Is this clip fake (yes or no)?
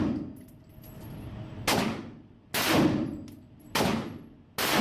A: no